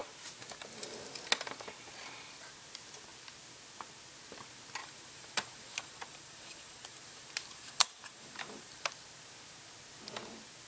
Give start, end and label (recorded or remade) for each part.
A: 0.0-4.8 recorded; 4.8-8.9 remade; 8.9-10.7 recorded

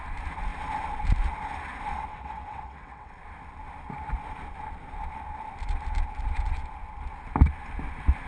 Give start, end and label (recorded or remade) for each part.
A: 0.0-2.1 recorded; 2.1-3.1 remade; 3.1-8.3 recorded